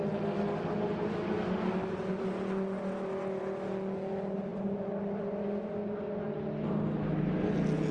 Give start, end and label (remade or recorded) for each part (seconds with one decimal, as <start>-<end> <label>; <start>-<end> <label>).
0.0-7.9 recorded